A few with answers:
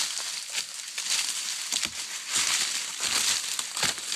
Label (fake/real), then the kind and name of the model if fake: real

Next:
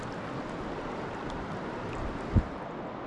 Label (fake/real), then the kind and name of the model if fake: real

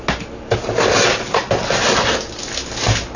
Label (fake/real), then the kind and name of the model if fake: real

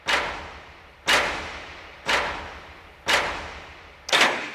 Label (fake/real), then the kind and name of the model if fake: real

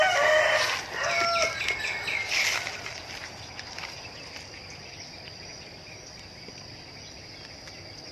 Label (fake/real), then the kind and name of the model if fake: real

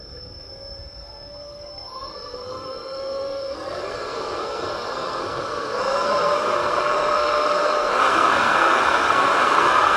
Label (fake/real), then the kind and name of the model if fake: fake, codec, SNAC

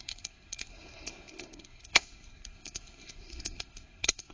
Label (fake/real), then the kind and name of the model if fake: fake, codec, SNAC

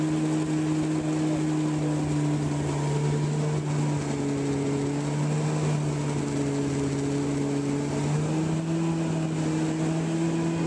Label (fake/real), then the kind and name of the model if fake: real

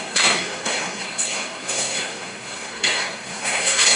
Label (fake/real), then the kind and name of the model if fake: fake, codec, SNAC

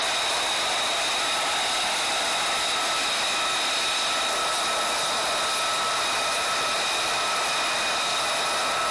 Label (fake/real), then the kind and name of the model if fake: real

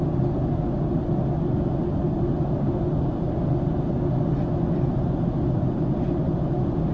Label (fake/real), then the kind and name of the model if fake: real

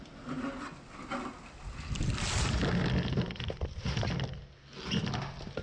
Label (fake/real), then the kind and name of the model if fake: real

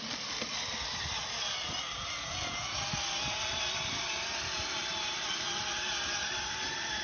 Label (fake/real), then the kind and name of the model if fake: real